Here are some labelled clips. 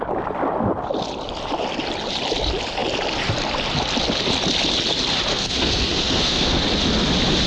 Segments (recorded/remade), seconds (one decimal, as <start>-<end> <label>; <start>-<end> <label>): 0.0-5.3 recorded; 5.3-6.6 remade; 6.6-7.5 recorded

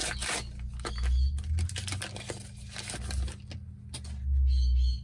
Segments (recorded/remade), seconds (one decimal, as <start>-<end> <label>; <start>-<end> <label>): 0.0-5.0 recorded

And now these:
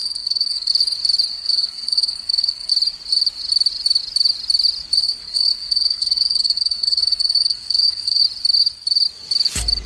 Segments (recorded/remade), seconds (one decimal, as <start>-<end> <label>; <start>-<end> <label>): 0.0-0.7 remade; 0.7-1.3 recorded; 1.3-2.7 remade; 2.7-5.0 recorded; 5.0-8.2 remade; 8.2-9.9 recorded

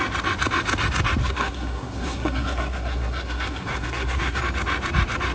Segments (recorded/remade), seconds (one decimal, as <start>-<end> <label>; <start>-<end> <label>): 0.0-1.2 recorded; 1.2-4.4 remade; 4.4-5.3 recorded

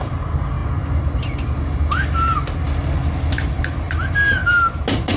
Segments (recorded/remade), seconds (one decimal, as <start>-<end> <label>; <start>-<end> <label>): 0.0-5.2 recorded

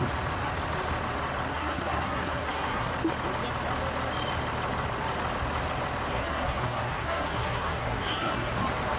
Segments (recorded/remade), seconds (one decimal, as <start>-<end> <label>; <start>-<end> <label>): 0.0-1.5 recorded; 1.5-2.9 remade; 2.9-6.1 recorded; 6.1-8.5 remade; 8.5-9.0 recorded